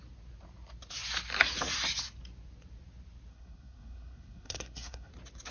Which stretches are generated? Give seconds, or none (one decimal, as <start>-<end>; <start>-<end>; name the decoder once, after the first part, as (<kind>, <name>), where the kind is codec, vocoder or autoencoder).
3.3-5.1 (codec, SNAC)